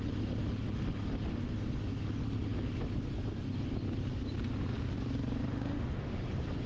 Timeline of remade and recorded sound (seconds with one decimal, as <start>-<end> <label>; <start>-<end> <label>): 0.0-5.5 recorded; 5.5-6.3 remade; 6.3-6.7 recorded